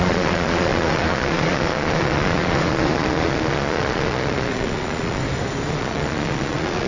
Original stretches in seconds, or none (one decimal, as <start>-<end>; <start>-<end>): 5.2-5.7